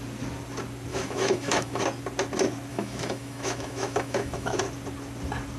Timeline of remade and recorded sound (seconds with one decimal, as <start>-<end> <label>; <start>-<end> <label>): 0.0-0.9 recorded; 0.9-1.8 remade; 1.8-2.7 recorded; 2.7-4.6 remade; 4.6-5.6 recorded